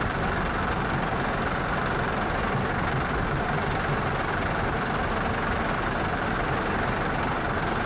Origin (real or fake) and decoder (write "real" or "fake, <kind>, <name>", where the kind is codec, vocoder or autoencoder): real